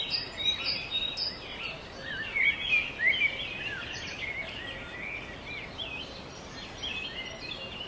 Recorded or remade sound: recorded